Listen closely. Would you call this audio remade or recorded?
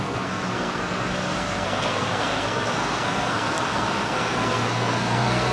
remade